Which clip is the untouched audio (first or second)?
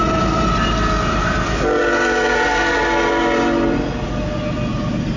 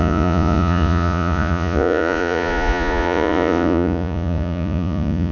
first